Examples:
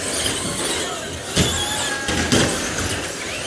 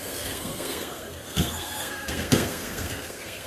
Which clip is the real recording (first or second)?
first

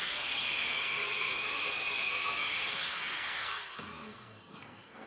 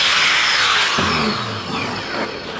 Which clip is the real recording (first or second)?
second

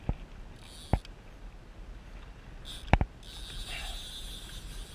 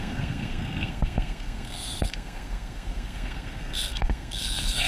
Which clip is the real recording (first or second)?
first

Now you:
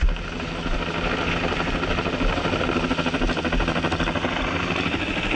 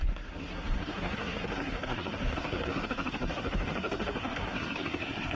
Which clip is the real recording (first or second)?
first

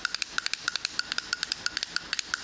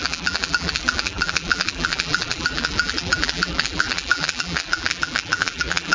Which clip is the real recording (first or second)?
first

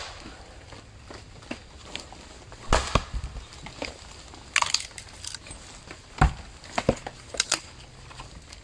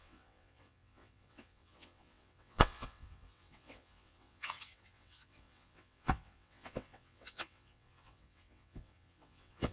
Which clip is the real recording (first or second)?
first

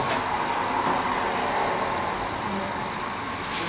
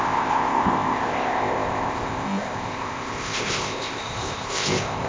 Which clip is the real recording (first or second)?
first